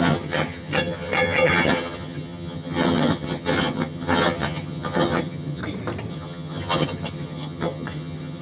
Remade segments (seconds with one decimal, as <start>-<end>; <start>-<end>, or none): 0.0-5.6; 6.1-8.4